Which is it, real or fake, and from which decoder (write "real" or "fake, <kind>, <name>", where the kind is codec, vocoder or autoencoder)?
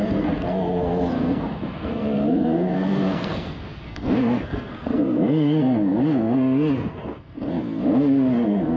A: fake, codec, SNAC